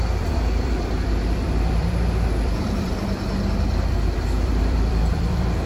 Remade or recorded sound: remade